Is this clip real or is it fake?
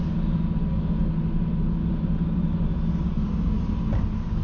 real